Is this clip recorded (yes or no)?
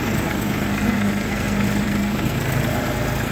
no